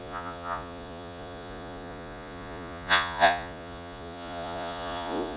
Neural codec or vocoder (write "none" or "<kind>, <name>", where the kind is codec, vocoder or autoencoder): vocoder, Vocos